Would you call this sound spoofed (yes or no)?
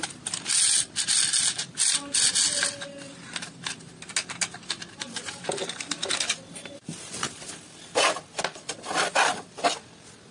no